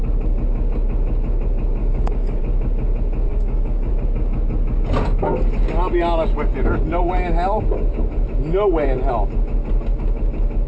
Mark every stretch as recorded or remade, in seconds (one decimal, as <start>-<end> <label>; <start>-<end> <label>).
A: 0.0-1.8 recorded; 1.8-2.4 remade; 2.4-3.3 recorded; 3.3-3.9 remade; 3.9-10.7 recorded